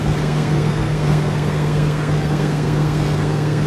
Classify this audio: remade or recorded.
remade